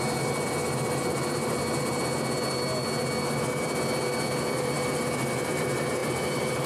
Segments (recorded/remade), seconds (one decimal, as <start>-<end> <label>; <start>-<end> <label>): 0.0-6.7 recorded